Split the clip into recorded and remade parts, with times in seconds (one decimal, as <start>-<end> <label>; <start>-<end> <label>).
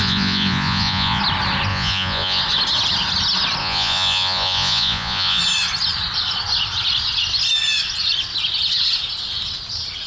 0.0-1.2 remade; 1.2-1.7 recorded; 1.7-2.4 remade; 2.4-3.6 recorded; 3.6-5.4 remade; 5.4-10.1 recorded